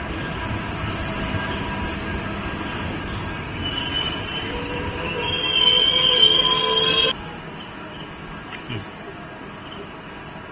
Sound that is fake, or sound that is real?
real